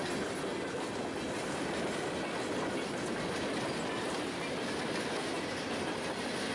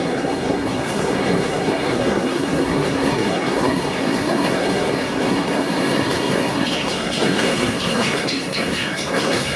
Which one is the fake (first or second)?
second